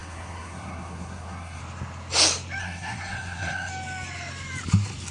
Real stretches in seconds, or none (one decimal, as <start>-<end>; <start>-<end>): 1.6-2.6; 3.7-5.1